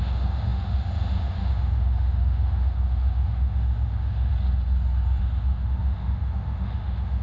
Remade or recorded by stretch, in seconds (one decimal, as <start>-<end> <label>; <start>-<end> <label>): 0.0-4.3 remade; 4.3-5.2 recorded; 5.2-7.2 remade